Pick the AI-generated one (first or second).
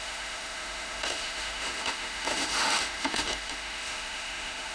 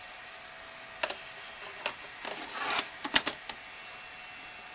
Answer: first